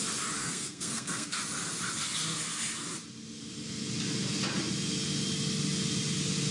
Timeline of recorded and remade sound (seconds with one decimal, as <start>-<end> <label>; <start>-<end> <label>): 0.0-0.4 recorded; 0.4-1.4 remade; 1.4-6.5 recorded